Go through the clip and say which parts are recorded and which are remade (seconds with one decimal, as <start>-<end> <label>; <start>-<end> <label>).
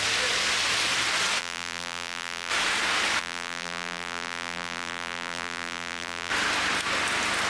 0.0-1.4 recorded; 1.4-2.5 remade; 2.5-3.2 recorded; 3.2-6.3 remade; 6.3-7.5 recorded